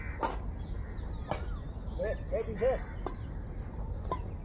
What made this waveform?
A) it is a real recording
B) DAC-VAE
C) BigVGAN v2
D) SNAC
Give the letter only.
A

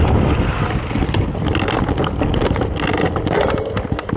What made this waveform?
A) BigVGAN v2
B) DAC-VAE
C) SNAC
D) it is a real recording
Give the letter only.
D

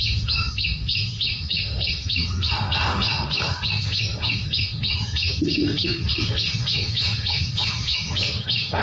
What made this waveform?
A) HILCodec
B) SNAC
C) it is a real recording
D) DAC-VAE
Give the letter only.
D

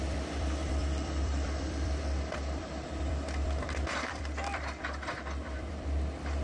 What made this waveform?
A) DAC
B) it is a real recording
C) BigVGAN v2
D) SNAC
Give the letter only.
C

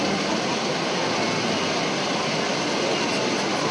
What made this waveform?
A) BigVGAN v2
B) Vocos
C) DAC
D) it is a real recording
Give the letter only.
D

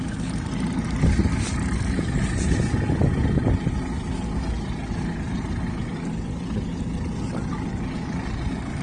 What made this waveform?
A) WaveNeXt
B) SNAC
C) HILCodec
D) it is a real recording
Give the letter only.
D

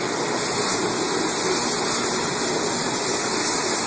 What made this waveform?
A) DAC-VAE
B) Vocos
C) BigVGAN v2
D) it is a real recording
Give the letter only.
D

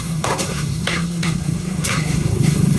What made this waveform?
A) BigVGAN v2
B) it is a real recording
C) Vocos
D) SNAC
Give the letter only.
D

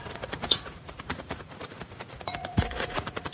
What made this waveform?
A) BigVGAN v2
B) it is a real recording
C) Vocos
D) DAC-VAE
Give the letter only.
C